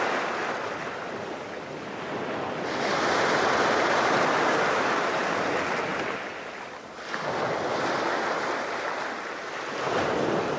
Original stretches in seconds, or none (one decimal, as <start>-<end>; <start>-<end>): 0.0-10.6